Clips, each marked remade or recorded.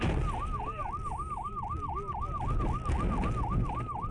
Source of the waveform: recorded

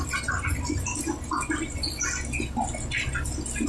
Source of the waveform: recorded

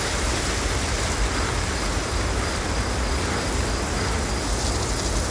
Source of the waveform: recorded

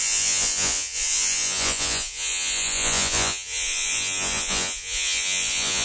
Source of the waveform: remade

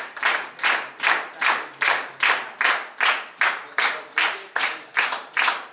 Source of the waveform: recorded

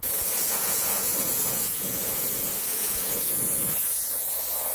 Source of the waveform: remade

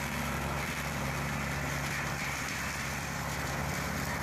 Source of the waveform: remade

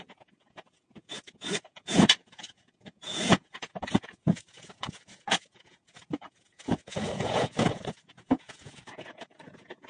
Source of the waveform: remade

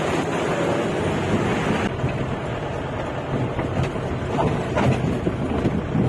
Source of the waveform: recorded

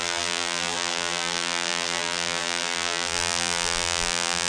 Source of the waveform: remade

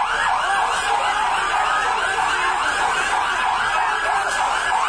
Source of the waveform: recorded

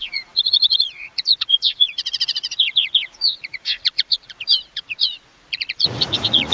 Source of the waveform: remade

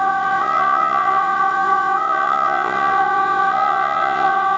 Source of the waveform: remade